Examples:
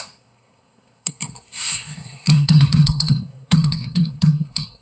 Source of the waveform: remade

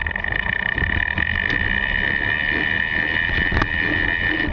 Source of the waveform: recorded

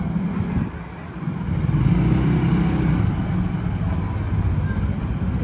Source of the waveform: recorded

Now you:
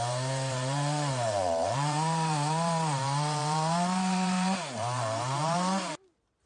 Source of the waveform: remade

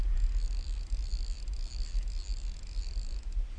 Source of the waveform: recorded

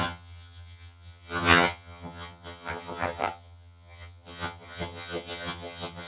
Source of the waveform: remade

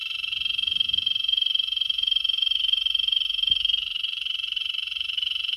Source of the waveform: remade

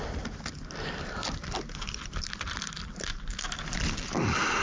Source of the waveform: recorded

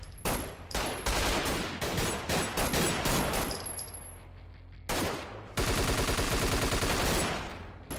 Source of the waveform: recorded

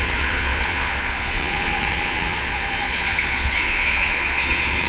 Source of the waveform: remade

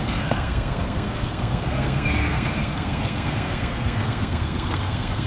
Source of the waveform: remade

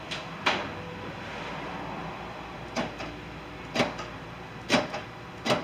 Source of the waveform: recorded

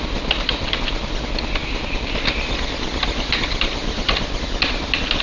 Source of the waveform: recorded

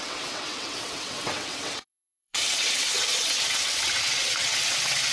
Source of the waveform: remade